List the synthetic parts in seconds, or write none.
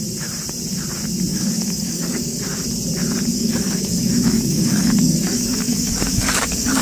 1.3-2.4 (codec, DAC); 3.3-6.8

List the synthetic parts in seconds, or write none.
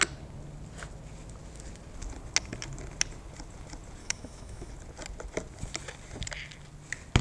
4.0-4.7 (autoencoder, DAC-VAE)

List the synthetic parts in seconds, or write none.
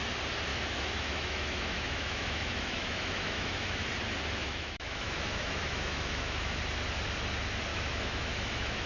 0.5-3.9 (autoencoder, DAC-VAE); 4.4-6.6; 7.7-8.9